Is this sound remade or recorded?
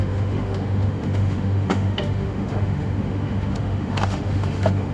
remade